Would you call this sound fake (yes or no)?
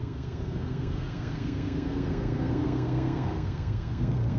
yes